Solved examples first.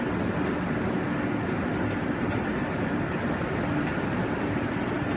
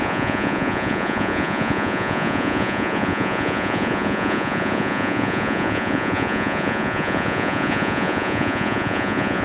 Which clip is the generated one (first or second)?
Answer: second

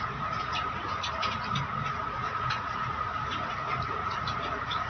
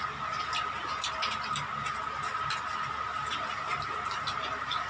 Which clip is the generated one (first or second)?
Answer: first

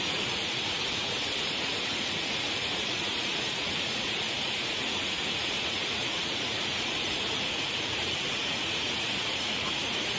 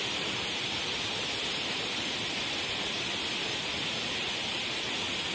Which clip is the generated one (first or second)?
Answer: first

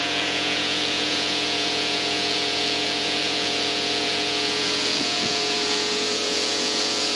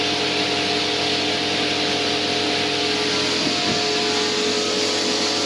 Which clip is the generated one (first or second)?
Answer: first